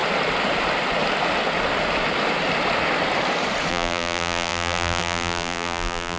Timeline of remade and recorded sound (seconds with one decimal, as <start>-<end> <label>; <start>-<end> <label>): 0.0-3.7 recorded; 3.7-6.2 remade